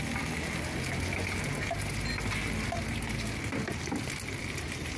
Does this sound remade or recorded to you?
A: recorded